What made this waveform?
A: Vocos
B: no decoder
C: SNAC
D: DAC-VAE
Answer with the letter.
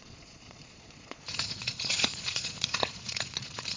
A